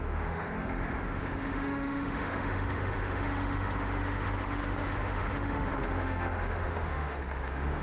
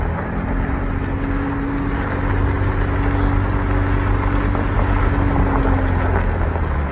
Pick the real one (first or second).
second